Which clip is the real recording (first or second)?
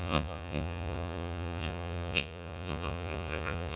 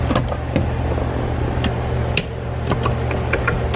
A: second